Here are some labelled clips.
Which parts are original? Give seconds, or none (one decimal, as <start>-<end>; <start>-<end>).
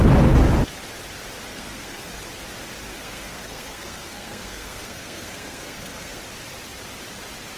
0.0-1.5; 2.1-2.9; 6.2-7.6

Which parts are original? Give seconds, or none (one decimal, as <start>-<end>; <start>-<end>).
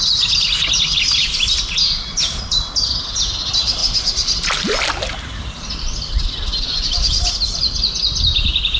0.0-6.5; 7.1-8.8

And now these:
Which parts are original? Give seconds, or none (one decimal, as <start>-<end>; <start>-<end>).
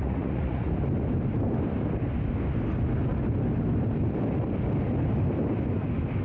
0.7-6.2